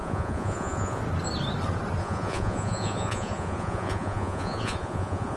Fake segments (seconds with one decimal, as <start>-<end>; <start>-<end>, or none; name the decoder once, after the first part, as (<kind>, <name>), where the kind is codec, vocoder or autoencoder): 0.0-1.0 (vocoder, Vocos); 2.0-5.4